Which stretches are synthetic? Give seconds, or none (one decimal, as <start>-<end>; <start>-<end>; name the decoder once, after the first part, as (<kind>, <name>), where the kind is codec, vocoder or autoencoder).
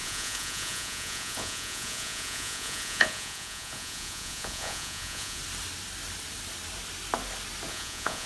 0.0-5.4 (vocoder, Vocos); 7.7-8.3